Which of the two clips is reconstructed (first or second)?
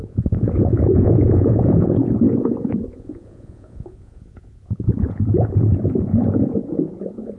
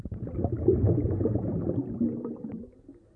first